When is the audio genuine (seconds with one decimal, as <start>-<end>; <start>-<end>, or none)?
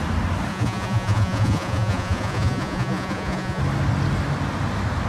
0.0-0.5; 3.6-5.1